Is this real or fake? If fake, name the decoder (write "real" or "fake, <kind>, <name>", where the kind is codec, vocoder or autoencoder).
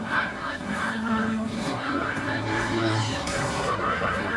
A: fake, codec, SNAC